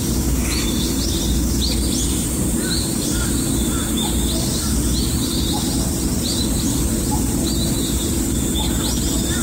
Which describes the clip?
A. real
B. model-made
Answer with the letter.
A